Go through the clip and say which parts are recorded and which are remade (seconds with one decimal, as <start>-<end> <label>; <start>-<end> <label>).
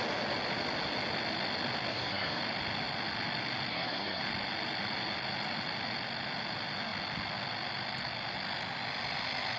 0.0-1.9 recorded; 1.9-2.4 remade; 2.4-3.7 recorded; 3.7-4.2 remade; 4.2-9.6 recorded